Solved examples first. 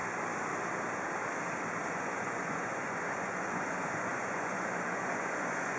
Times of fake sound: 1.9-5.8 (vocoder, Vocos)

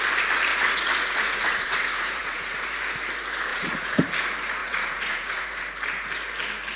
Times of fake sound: 0.5-2.8 (vocoder, Vocos); 3.5-4.1; 4.6-5.6

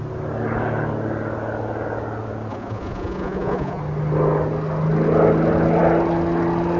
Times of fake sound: 2.5-3.8 (vocoder, Vocos)

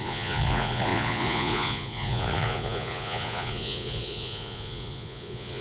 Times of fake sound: 0.0-5.6 (vocoder, Vocos)

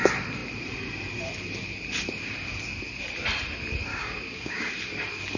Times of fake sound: 3.9-4.7 (codec, DAC)

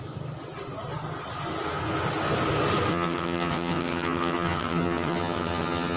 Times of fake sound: 2.9-6.0 (vocoder, HiFi-GAN)

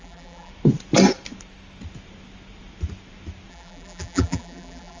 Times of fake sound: 0.0-0.5 (vocoder, BigVGAN v2); 3.5-5.0